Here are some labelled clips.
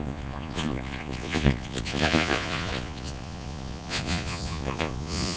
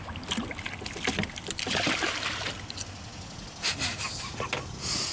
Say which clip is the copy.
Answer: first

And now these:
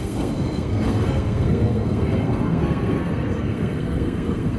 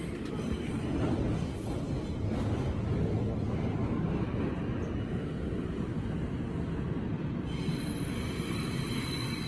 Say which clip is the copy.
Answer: first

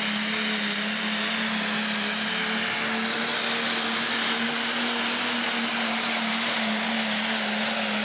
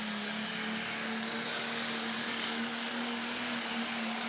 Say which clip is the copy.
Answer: second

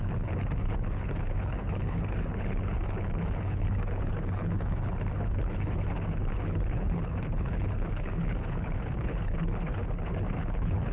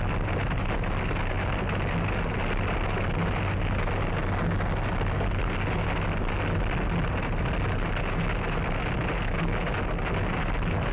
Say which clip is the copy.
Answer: first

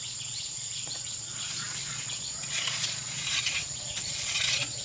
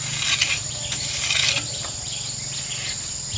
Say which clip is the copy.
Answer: first